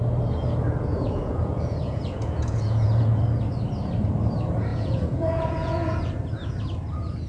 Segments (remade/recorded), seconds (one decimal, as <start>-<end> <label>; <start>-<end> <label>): 0.0-0.9 recorded; 0.9-3.2 remade; 3.2-4.7 recorded; 4.7-6.1 remade; 6.1-7.3 recorded